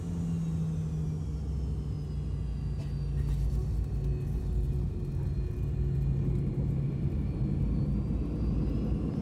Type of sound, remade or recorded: recorded